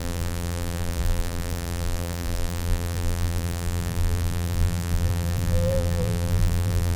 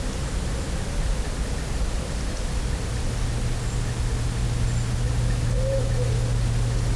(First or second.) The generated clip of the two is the first